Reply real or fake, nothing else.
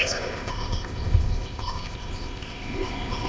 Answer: fake